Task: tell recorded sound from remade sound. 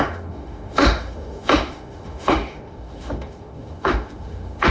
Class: remade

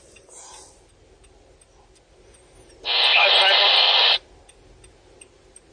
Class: recorded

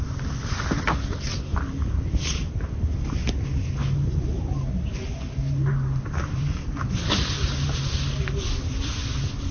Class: recorded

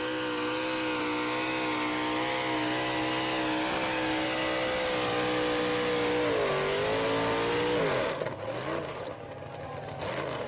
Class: recorded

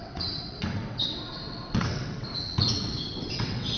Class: remade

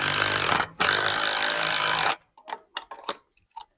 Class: recorded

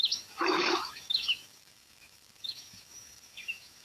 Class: remade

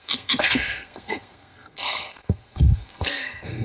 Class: remade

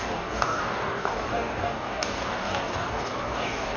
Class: remade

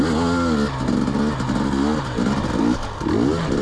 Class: recorded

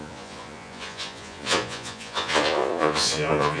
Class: remade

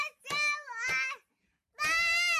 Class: recorded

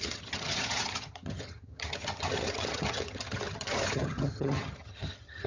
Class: remade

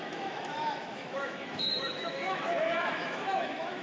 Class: remade